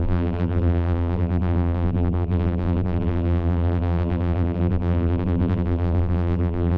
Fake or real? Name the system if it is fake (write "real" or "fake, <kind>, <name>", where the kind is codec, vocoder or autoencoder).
fake, vocoder, BigVGAN v2